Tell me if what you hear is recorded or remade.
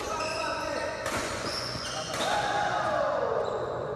remade